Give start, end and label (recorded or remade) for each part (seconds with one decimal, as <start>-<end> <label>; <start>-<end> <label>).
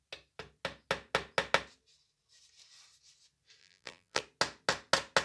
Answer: 0.0-3.6 recorded; 3.6-4.2 remade; 4.2-5.2 recorded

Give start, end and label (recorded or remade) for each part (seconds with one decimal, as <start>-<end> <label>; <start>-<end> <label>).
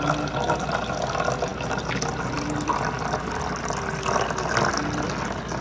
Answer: 0.0-5.6 recorded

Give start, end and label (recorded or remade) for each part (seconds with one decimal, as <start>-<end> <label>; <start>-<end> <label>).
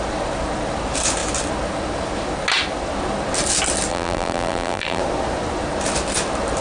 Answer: 0.0-3.9 recorded; 3.9-5.0 remade; 5.0-6.6 recorded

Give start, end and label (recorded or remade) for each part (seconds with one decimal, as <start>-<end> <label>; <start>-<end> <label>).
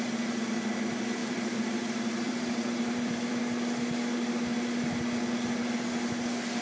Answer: 0.0-1.2 recorded; 1.2-3.4 remade; 3.4-6.6 recorded